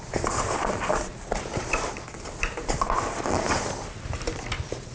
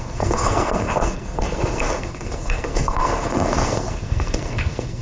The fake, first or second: second